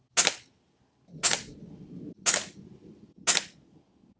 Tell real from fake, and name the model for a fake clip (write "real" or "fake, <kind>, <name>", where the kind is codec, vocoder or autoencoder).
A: real